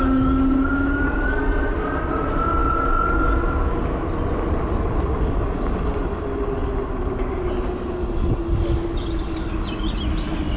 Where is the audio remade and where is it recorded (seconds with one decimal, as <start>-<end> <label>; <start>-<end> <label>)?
0.0-10.6 recorded